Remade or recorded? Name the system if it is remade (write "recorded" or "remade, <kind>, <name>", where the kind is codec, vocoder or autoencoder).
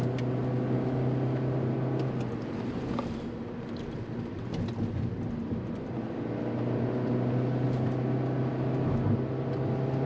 recorded